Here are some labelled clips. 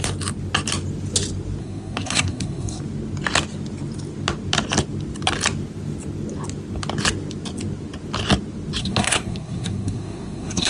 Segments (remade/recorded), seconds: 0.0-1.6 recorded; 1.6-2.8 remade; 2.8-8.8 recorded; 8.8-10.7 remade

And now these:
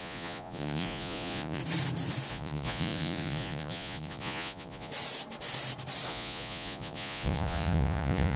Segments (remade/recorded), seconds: 0.0-1.6 remade; 1.6-2.3 recorded; 2.3-4.9 remade; 4.9-6.1 recorded; 6.1-8.4 remade

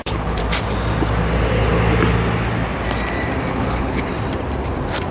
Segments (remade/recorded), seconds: 0.0-0.4 remade; 0.4-3.5 recorded; 3.5-4.1 remade; 4.1-5.1 recorded

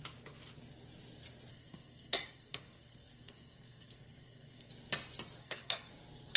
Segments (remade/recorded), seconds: 0.0-1.5 recorded; 1.5-4.7 remade; 4.7-5.4 recorded; 5.4-5.9 remade; 5.9-6.4 recorded

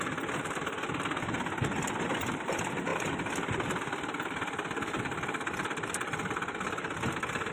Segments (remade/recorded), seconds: 0.0-7.5 recorded

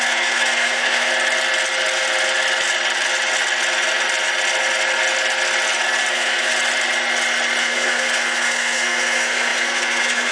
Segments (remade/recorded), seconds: 0.0-1.1 remade; 1.1-6.1 recorded; 6.1-6.5 remade; 6.5-7.6 recorded; 7.6-10.3 remade